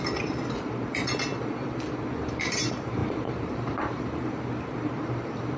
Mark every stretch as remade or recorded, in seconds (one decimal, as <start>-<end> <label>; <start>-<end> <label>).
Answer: 0.0-1.3 remade; 1.3-2.2 recorded; 2.2-5.6 remade